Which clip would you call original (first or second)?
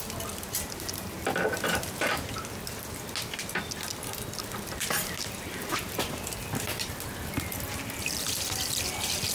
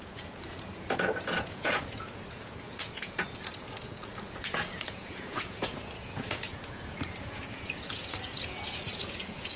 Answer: first